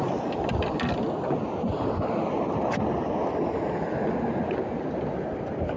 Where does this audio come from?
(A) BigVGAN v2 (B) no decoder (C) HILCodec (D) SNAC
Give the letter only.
B